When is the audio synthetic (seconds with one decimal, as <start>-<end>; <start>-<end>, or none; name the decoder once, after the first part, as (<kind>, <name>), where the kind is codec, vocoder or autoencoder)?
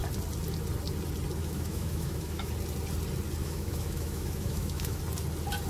1.4-2.5 (autoencoder, DAC-VAE); 3.4-5.0